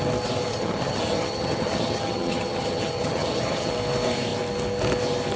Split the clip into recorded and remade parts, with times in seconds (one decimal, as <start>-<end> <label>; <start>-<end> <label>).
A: 0.0-0.5 recorded; 0.5-3.7 remade; 3.7-5.4 recorded